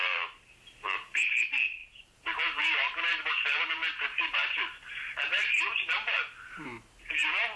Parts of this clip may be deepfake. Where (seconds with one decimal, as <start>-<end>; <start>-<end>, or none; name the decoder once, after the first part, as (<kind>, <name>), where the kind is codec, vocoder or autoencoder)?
0.0-7.6 (vocoder, BigVGAN v2)